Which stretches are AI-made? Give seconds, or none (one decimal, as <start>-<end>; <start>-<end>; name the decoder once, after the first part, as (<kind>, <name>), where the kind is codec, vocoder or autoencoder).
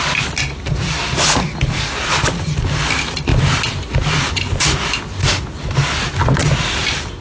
none